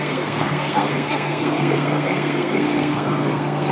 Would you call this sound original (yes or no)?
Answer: no